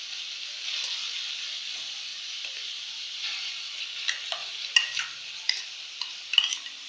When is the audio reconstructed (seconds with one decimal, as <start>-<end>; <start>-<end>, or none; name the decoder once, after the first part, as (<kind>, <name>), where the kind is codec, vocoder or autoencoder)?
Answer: 2.1-3.8 (vocoder, BigVGAN v2); 4.4-5.0